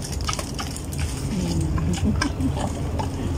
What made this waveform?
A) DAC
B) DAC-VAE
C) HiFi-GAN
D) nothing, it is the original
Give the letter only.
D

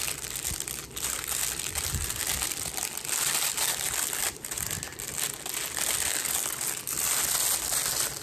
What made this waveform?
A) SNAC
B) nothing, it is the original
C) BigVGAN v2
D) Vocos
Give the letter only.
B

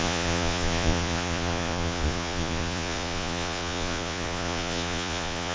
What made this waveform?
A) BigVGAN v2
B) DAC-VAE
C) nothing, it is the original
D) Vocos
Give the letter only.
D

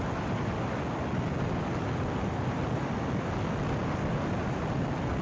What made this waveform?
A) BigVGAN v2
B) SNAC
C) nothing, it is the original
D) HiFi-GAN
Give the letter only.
C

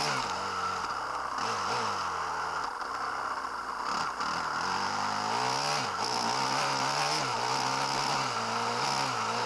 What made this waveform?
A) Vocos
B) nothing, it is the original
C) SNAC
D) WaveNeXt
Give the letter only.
B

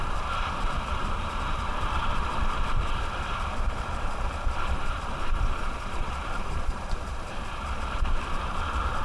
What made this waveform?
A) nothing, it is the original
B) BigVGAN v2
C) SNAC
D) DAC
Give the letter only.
B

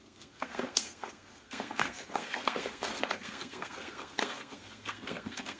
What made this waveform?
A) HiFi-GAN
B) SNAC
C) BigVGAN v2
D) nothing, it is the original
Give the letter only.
B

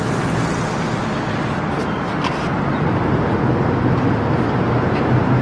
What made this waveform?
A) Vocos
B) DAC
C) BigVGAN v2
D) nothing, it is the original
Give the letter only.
D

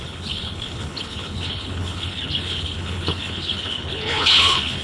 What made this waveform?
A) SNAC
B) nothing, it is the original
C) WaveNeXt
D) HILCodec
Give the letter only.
D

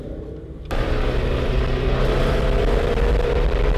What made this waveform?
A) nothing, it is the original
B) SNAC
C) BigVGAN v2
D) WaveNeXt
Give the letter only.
C